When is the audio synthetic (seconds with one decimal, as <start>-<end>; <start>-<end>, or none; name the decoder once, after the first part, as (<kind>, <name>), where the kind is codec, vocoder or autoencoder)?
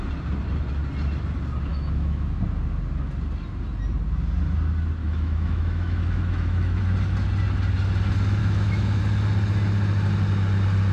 1.7-2.4 (autoencoder, DAC-VAE); 5.0-6.8; 8.4-9.0